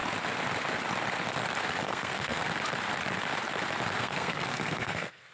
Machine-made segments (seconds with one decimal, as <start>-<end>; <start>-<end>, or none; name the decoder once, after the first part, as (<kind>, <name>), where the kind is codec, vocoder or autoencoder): 1.8-2.4 (codec, SNAC); 4.0-5.3